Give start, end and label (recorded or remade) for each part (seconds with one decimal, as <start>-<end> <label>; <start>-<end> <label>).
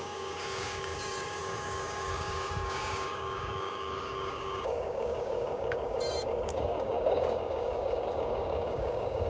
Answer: 0.0-9.3 remade